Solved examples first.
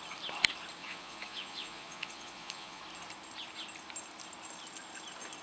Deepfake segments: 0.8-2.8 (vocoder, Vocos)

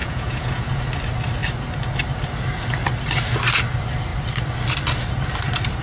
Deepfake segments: 0.0-0.8 (vocoder, Vocos)

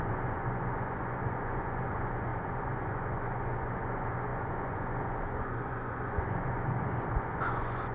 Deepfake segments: 0.0-7.9 (vocoder, Vocos)